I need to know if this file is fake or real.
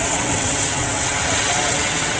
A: fake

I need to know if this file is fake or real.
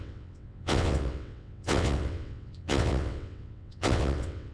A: fake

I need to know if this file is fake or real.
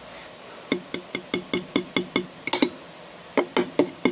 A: real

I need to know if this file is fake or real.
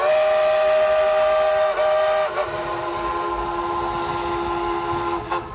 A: real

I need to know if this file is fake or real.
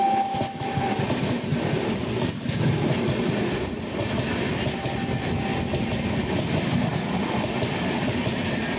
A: real